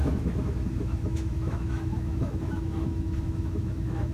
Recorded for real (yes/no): no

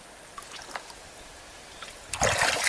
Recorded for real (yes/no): yes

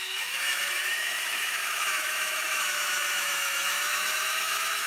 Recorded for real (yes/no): no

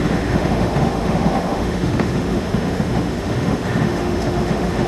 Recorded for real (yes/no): no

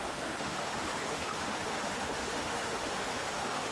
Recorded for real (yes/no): no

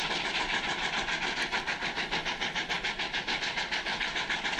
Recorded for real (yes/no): yes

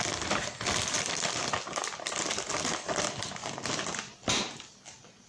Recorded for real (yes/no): yes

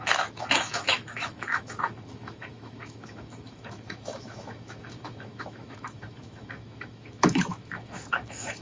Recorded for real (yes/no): no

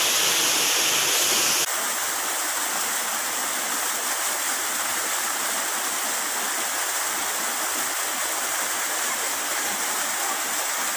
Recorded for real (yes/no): yes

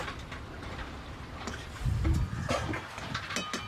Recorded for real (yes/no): yes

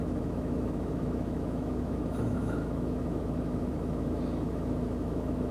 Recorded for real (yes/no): no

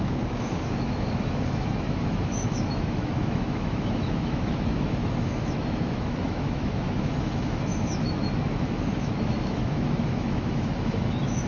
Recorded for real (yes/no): no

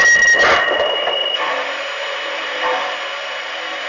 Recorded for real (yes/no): yes